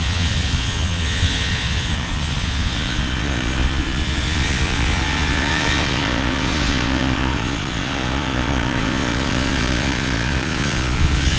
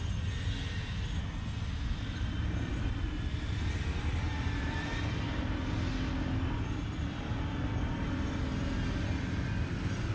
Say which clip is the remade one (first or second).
first